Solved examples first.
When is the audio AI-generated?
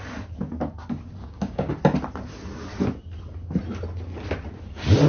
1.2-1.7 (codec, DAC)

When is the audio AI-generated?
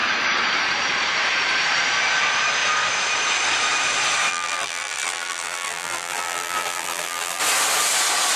4.3-7.4 (vocoder, BigVGAN v2)